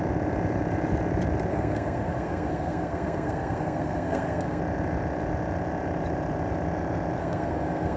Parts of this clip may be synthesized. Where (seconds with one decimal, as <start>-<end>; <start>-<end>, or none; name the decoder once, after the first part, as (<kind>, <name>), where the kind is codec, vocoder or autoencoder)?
1.5-4.6 (codec, SNAC); 7.2-8.0